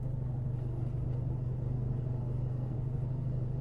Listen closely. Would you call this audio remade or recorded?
remade